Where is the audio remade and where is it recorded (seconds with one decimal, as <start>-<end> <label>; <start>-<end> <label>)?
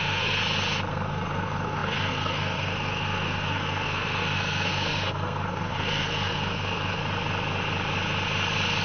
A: 0.0-0.4 remade; 0.4-0.9 recorded; 0.9-7.0 remade; 7.0-8.8 recorded